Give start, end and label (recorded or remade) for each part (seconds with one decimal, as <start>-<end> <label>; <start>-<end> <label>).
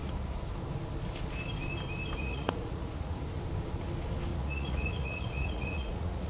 0.0-2.2 recorded; 2.2-3.2 remade; 3.2-4.3 recorded; 4.3-6.3 remade